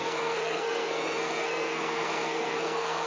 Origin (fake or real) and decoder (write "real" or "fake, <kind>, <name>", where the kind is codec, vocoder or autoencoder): fake, codec, SNAC